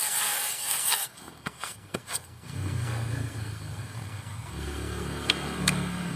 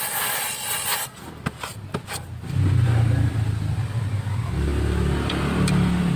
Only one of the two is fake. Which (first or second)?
first